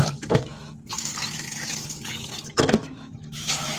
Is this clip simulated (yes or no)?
yes